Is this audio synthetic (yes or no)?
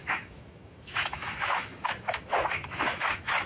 yes